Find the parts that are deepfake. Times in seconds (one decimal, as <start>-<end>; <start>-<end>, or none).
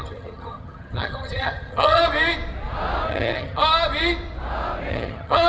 0.0-2.0; 3.1-3.6; 4.9-5.5